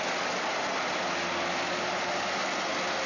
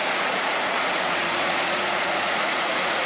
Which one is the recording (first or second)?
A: first